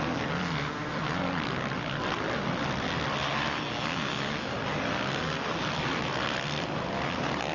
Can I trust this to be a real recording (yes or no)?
yes